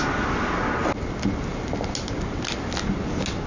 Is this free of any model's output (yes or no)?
yes